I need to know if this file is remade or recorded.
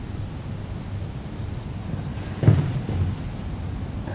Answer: recorded